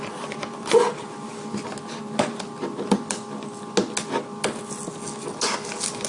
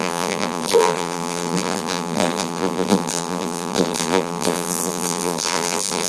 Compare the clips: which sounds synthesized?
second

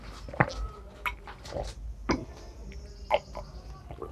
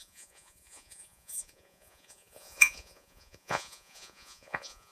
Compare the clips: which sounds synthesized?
second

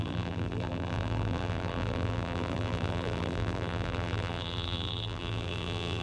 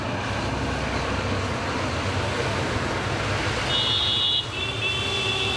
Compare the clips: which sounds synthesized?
first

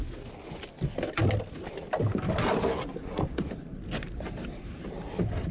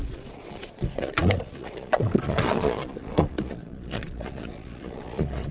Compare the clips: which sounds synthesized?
second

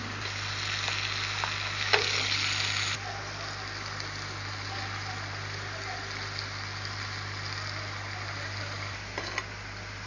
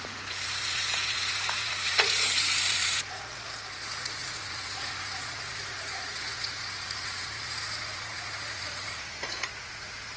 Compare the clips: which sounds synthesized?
second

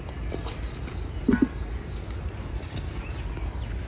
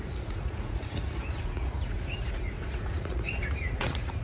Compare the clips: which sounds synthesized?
second